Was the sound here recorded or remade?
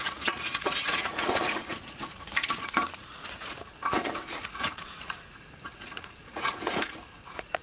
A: remade